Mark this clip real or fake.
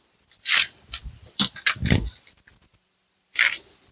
fake